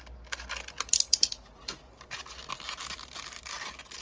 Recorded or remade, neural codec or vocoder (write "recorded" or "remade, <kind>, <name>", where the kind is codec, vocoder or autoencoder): recorded